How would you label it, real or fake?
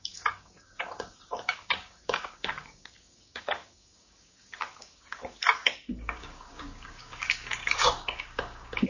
fake